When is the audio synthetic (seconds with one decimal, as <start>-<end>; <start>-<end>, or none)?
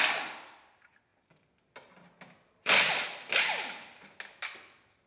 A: none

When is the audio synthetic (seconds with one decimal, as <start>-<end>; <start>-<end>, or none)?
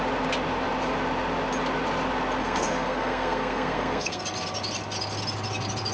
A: 2.4-4.2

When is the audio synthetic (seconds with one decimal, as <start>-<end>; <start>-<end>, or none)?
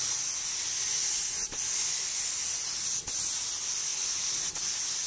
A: none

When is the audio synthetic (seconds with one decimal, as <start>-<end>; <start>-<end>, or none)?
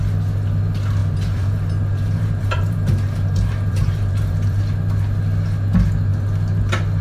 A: 1.0-4.6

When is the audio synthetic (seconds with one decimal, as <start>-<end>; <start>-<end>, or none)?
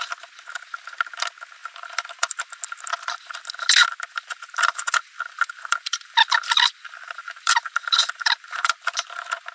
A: 1.6-2.4; 3.8-8.9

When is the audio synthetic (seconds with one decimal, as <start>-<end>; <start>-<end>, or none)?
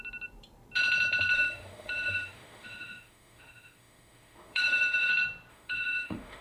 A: 1.3-5.1; 5.5-6.4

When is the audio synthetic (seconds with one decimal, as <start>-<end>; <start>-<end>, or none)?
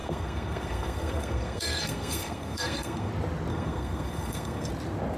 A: 0.0-3.1; 3.5-4.7